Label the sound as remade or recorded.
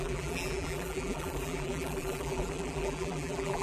remade